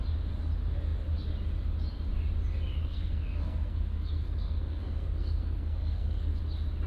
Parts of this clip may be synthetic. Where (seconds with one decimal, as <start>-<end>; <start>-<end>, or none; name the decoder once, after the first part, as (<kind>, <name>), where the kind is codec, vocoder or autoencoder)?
2.8-6.3 (codec, SNAC)